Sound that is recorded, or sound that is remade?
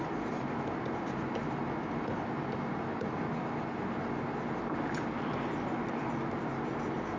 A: recorded